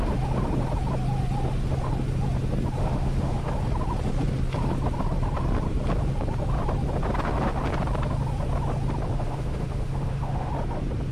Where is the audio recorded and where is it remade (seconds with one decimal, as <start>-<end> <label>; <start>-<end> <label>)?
0.0-2.8 recorded; 2.8-3.5 remade; 3.5-9.1 recorded; 9.1-10.5 remade; 10.5-11.1 recorded